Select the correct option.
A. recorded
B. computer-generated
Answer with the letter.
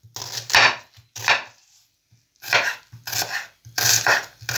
A